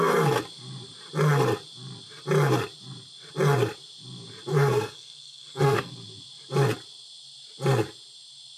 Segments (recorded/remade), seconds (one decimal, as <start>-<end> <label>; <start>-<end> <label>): 0.0-4.5 recorded; 4.5-5.9 remade; 5.9-8.6 recorded